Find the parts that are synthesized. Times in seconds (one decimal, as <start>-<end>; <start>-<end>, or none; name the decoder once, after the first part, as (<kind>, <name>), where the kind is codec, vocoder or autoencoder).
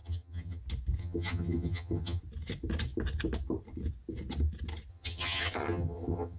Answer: 0.0-0.6 (vocoder, HiFi-GAN); 1.0-2.2; 4.9-6.4